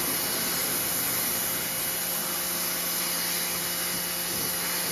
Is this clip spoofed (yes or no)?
no